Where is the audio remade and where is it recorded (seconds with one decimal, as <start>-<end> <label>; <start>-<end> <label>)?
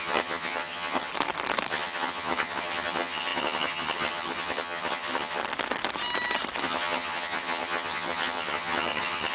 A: 0.0-1.1 remade; 1.1-1.7 recorded; 1.7-5.4 remade; 5.4-6.6 recorded; 6.6-9.3 remade